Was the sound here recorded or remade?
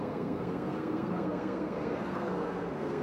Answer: remade